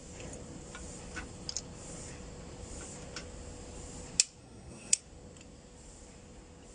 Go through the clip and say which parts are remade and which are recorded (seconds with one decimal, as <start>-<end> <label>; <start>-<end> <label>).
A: 0.0-4.4 recorded; 4.4-5.0 remade; 5.0-6.7 recorded